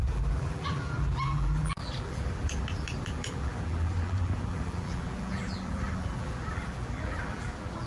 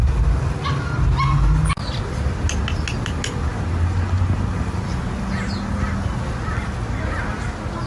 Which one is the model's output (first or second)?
first